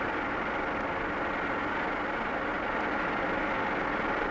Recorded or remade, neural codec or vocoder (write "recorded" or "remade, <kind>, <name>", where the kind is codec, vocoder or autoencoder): recorded